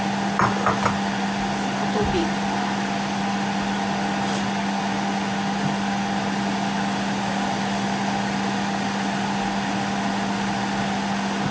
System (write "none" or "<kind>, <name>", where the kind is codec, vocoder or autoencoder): none